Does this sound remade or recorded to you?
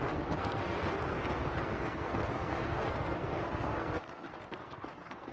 remade